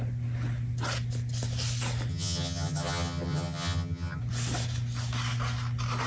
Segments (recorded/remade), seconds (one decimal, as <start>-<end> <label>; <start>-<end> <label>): 0.0-2.1 recorded; 2.1-4.2 remade; 4.2-6.1 recorded

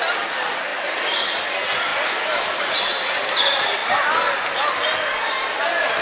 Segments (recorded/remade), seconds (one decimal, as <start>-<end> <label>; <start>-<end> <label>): 0.0-6.0 recorded

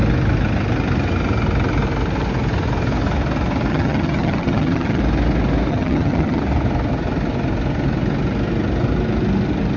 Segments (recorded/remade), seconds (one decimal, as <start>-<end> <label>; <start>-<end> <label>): 0.0-3.7 recorded; 3.7-5.0 remade; 5.0-5.7 recorded; 5.7-6.4 remade; 6.4-9.8 recorded

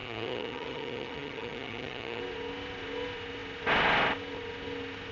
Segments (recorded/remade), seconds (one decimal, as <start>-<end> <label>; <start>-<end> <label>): 0.0-2.2 remade; 2.2-5.1 recorded

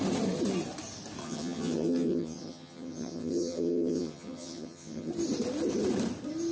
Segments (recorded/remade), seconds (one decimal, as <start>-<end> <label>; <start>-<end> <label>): 0.0-1.2 recorded; 1.2-5.1 remade; 5.1-6.5 recorded

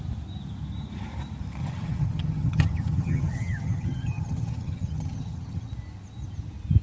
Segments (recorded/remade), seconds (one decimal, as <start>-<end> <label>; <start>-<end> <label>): 0.0-1.6 recorded; 1.6-5.7 remade; 5.7-6.8 recorded

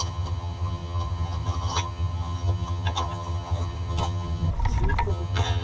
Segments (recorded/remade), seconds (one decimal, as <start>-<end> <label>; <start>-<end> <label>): 0.0-4.5 remade; 4.5-5.1 recorded; 5.1-5.6 remade